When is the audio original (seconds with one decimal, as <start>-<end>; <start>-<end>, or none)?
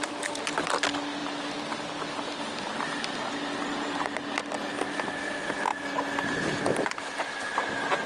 0.0-8.1